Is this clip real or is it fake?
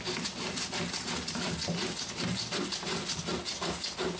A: real